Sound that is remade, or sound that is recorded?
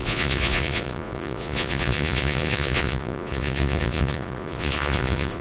remade